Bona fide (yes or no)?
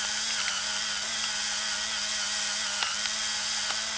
yes